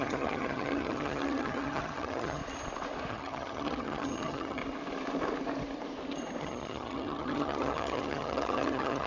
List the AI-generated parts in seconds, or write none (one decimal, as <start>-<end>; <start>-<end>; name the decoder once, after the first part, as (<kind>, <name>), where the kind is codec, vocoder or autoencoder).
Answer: 0.0-2.4 (vocoder, HiFi-GAN); 3.1-4.6; 6.4-9.1